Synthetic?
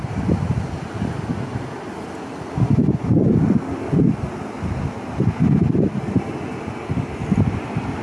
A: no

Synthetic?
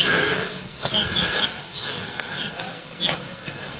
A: yes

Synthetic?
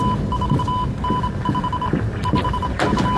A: no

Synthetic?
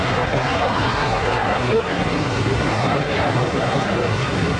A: yes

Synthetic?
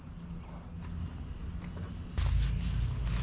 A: no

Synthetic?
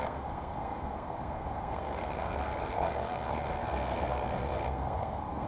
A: yes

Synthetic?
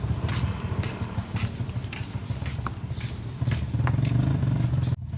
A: no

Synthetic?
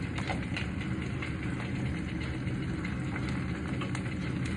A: no